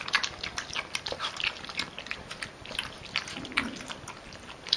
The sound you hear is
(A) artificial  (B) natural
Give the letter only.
B